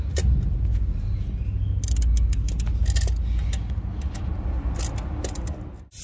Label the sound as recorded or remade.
recorded